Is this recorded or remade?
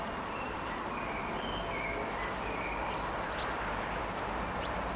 remade